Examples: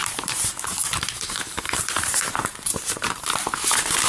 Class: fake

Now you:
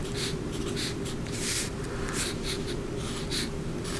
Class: fake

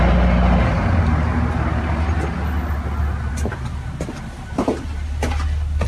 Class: real